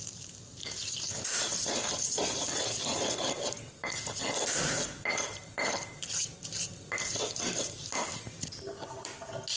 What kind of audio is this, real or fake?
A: real